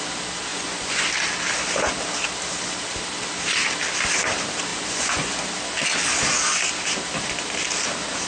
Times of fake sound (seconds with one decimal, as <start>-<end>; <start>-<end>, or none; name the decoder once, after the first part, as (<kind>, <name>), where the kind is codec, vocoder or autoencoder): 0.5-1.0 (vocoder, Vocos); 4.7-5.4